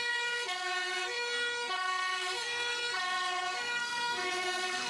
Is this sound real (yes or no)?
no